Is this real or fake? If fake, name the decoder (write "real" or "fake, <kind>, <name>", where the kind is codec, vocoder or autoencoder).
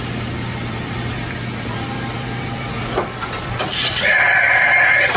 fake, vocoder, BigVGAN v2